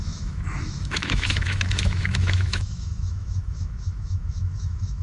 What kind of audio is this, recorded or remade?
remade